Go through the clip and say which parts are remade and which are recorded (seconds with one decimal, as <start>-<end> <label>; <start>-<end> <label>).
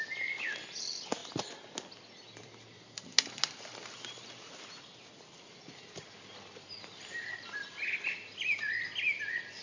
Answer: 0.0-9.6 recorded